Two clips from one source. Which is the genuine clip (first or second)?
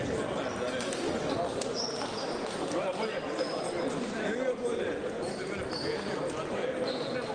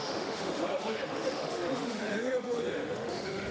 first